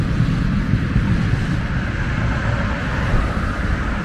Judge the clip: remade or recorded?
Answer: recorded